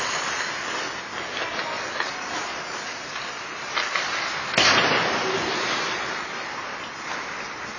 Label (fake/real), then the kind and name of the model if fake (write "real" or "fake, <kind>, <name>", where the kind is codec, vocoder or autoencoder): real